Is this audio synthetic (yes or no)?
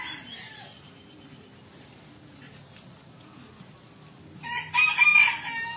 no